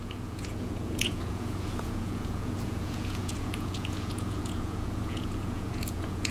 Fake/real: fake